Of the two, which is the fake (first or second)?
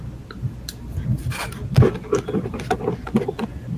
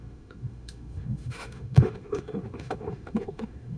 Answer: second